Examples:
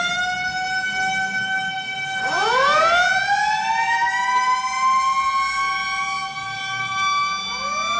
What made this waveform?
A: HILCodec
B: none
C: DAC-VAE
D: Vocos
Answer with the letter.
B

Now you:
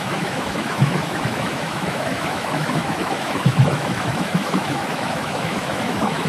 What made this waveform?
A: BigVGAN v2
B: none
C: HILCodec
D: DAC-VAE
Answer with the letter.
D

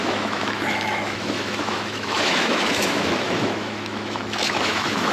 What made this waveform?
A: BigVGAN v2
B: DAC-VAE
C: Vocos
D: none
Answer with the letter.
B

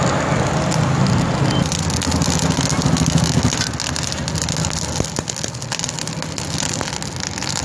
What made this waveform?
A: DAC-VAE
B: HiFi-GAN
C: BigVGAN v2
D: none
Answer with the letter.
D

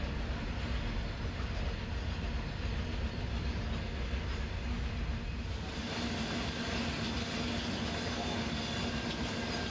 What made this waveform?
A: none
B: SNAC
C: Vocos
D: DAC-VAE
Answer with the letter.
A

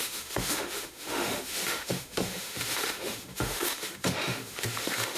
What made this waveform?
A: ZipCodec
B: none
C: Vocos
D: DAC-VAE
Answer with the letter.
D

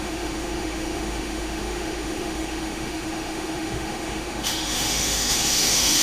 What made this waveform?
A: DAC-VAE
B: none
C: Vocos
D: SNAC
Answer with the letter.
A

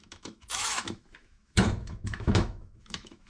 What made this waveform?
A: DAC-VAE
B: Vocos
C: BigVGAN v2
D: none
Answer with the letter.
A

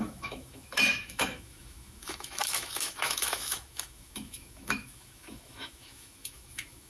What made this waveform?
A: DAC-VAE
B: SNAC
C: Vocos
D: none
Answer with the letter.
A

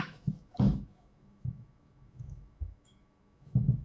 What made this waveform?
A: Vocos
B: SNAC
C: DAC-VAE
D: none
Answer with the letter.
C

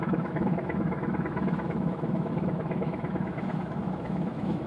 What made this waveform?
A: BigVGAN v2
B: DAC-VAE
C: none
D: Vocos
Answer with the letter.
B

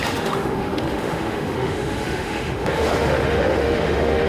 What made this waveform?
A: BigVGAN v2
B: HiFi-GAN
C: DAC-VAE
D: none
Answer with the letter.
C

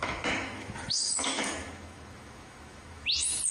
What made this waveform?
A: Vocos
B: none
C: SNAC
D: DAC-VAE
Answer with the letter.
D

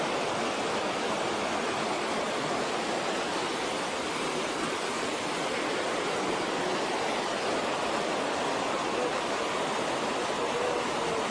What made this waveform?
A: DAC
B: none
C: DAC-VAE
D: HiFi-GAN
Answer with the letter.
B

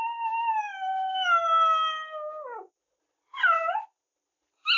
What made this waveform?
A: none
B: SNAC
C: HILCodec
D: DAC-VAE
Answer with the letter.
A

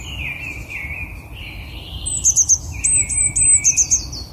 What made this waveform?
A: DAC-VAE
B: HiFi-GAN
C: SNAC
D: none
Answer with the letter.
D